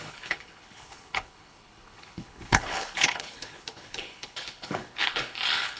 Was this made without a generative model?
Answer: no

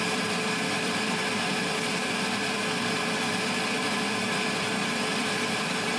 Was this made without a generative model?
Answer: no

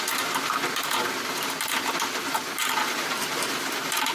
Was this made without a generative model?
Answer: yes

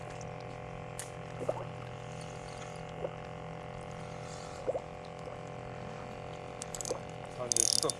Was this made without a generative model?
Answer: yes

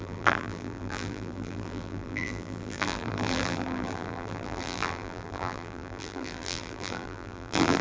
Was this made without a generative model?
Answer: no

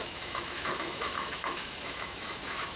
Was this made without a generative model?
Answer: no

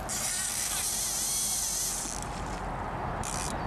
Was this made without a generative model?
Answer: yes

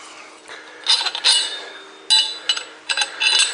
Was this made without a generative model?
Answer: yes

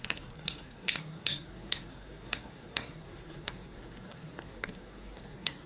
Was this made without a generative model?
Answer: no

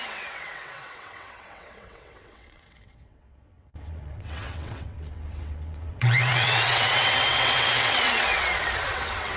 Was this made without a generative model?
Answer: no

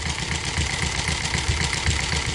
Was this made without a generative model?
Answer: yes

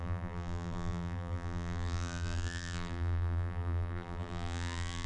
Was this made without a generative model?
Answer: no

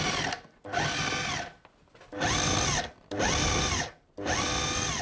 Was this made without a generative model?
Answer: yes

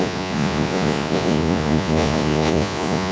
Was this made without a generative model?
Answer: no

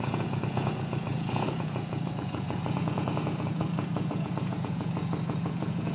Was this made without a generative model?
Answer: no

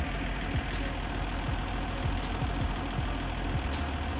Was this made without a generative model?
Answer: yes